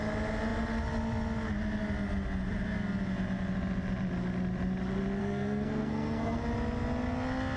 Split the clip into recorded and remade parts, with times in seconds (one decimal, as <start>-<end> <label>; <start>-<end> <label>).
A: 0.0-5.2 recorded; 5.2-6.4 remade; 6.4-7.6 recorded